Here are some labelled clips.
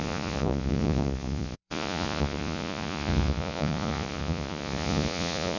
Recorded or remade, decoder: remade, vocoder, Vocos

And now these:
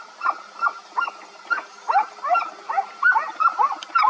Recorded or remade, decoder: recorded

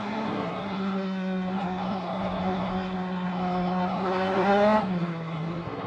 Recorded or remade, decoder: remade, codec, SNAC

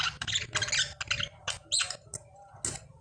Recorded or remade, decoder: recorded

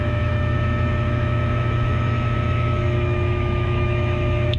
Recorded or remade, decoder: remade, autoencoder, DAC-VAE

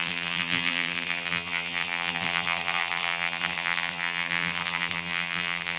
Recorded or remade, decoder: remade, vocoder, BigVGAN v2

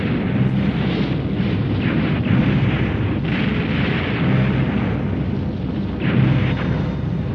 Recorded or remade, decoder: recorded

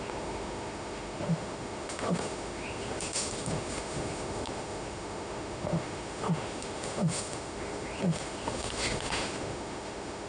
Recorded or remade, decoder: remade, autoencoder, DAC-VAE